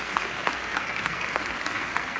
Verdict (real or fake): fake